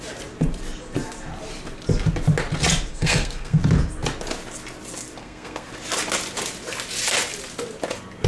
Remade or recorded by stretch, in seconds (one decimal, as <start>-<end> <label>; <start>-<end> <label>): 0.0-2.9 recorded; 2.9-3.6 remade; 3.6-5.2 recorded; 5.2-5.7 remade; 5.7-8.3 recorded